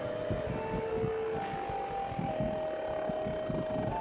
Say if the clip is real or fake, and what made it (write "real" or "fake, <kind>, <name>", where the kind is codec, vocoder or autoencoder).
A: real